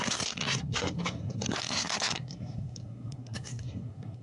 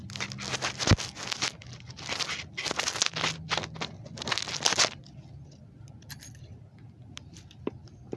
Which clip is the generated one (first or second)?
first